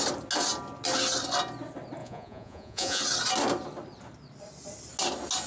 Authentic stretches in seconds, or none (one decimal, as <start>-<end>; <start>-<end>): 0.0-2.0; 3.0-5.5

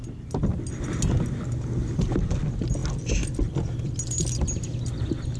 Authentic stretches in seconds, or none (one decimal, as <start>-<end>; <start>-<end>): 0.0-5.4

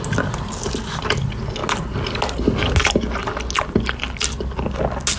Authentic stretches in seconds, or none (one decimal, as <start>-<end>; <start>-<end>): 0.0-5.2

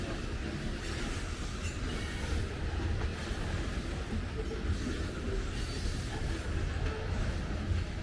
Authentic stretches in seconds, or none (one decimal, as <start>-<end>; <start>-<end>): 0.0-8.0

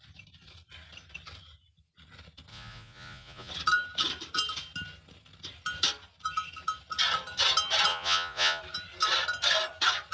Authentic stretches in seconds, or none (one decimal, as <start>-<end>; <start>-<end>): 0.0-2.5; 3.5-7.9; 8.6-10.1

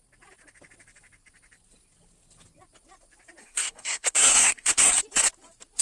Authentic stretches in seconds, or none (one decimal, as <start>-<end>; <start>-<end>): 0.0-3.4; 5.0-5.8

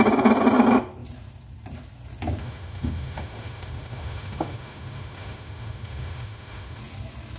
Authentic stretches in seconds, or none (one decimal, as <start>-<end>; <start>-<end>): 0.0-2.4; 6.8-7.4